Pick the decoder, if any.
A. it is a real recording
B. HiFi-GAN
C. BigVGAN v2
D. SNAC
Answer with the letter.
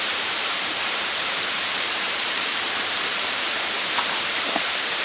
C